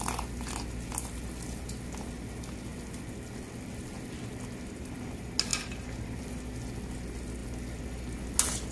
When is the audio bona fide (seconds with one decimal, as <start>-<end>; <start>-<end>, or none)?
0.0-8.7